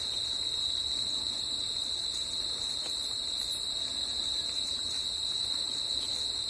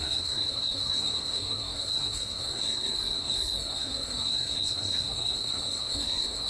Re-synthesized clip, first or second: second